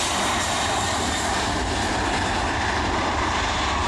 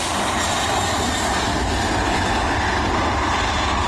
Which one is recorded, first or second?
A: second